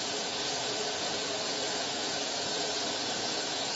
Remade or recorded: remade